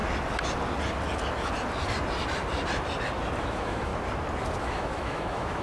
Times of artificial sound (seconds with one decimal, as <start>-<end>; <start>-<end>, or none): 3.4-3.9; 4.6-5.6